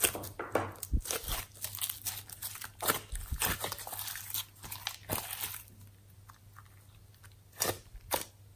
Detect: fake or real real